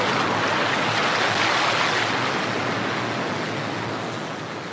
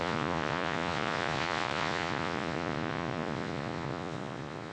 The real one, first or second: first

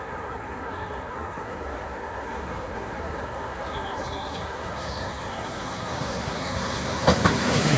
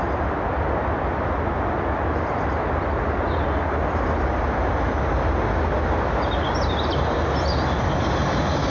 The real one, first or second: second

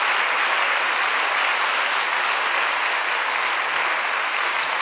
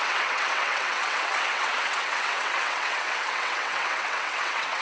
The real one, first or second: first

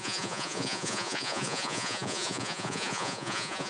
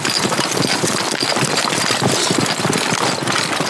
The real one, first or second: second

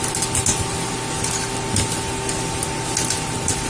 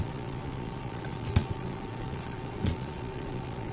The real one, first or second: first